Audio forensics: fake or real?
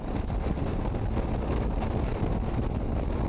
real